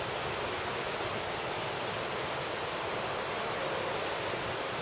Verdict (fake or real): real